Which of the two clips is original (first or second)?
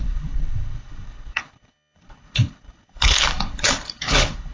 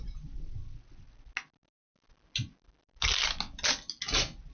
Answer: second